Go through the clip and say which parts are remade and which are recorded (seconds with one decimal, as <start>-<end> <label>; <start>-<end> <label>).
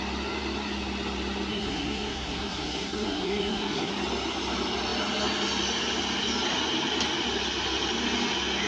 0.0-1.5 recorded; 1.5-3.9 remade; 3.9-8.7 recorded